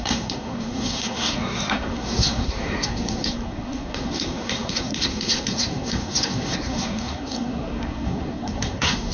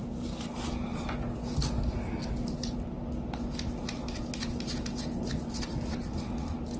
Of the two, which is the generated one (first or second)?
first